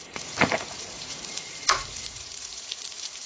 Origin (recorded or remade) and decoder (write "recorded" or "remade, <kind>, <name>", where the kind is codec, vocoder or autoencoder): remade, vocoder, Vocos